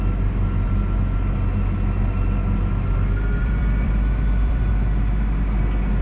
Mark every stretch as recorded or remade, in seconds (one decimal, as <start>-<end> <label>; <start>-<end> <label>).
0.0-3.4 recorded; 3.4-4.7 remade; 4.7-6.0 recorded